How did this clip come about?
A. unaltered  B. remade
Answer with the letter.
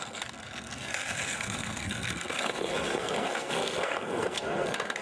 B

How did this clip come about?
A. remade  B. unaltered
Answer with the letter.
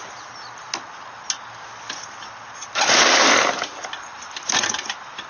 B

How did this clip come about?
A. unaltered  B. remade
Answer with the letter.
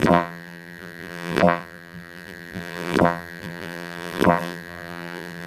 B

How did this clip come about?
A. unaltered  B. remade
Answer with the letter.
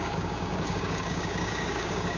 B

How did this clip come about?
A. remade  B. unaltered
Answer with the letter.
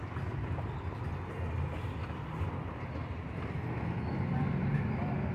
B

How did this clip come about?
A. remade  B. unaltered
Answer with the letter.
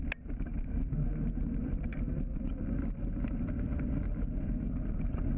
B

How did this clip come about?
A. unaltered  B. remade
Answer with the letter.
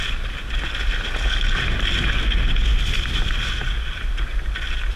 A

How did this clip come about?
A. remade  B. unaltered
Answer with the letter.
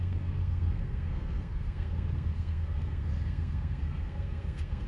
A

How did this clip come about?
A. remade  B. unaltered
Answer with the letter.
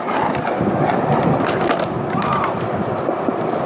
B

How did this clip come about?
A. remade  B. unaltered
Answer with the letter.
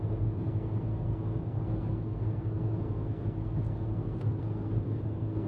A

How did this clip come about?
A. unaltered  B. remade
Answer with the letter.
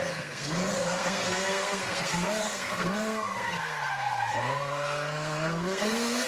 B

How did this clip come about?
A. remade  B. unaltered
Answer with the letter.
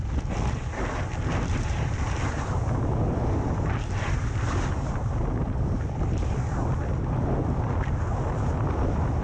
B